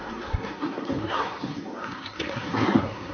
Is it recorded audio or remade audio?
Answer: remade